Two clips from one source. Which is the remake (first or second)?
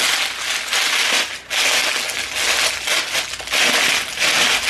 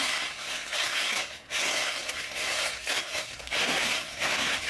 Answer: second